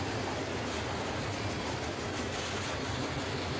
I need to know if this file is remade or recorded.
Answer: recorded